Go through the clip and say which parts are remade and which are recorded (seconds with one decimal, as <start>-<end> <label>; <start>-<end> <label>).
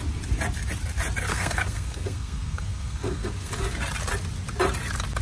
0.0-1.3 recorded; 1.3-3.5 remade; 3.5-5.2 recorded